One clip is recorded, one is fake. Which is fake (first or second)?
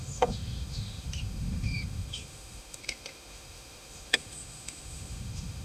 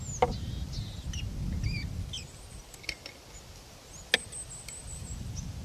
first